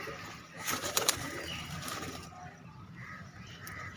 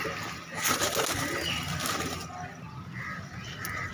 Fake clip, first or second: first